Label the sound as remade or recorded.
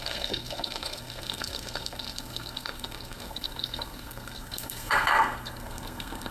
remade